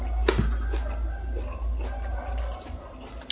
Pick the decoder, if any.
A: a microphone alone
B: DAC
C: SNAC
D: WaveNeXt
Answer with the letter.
A